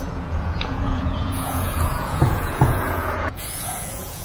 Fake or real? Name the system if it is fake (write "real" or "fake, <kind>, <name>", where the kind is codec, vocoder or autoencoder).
fake, vocoder, Vocos